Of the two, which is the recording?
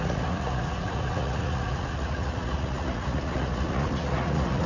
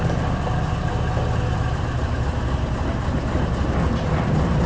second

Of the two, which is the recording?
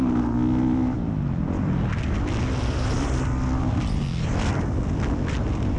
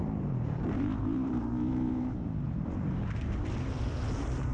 first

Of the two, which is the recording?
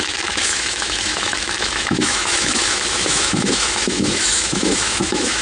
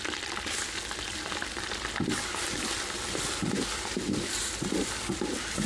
second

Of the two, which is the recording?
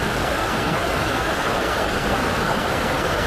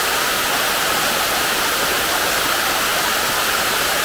second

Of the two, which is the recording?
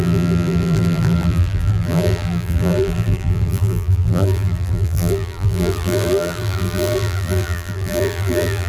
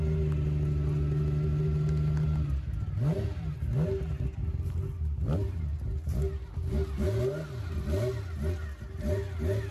second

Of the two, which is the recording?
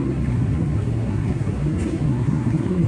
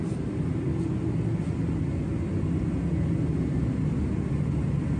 second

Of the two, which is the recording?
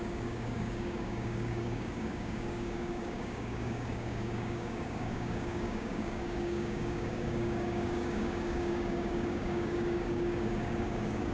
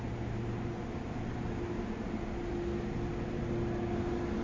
second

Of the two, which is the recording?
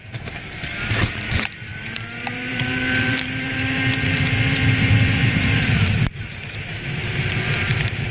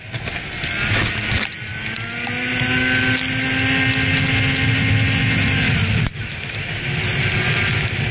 second